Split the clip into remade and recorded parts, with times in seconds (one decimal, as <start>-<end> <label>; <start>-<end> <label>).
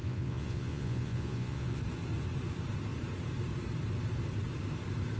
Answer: 0.0-1.8 remade; 1.8-5.2 recorded